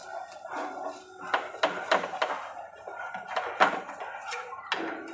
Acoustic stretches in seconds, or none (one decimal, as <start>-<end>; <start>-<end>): 0.0-5.1